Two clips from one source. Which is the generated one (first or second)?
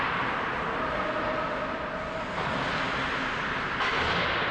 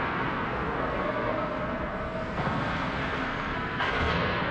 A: second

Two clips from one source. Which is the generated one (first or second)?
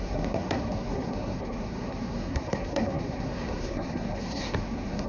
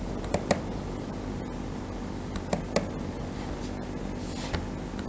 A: first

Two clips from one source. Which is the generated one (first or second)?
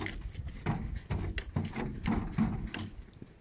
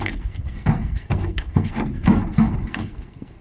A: second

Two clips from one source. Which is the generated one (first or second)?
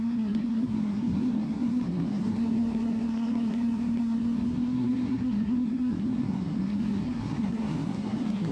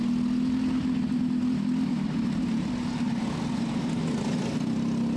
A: first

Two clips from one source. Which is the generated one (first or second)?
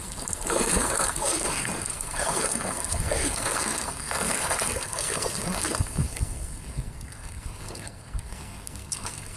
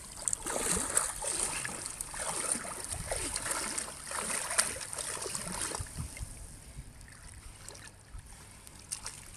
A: first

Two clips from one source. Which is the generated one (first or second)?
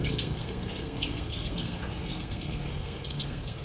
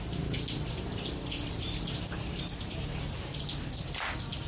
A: first